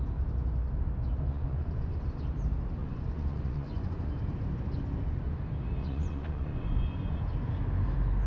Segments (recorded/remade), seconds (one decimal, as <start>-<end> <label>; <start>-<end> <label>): 0.0-1.3 recorded; 1.3-2.0 remade; 2.0-2.8 recorded; 2.8-4.1 remade; 4.1-5.8 recorded; 5.8-7.2 remade; 7.2-8.3 recorded